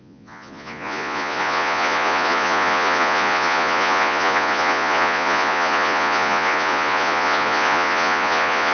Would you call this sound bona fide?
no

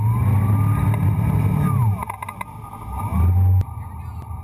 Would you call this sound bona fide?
yes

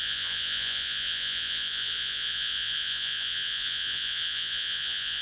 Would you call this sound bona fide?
no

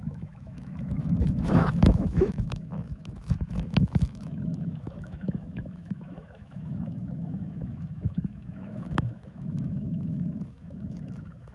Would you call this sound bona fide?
no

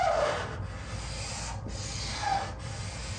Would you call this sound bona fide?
yes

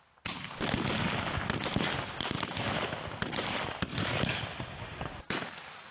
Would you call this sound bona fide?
yes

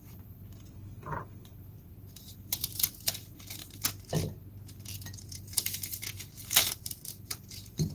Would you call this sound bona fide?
no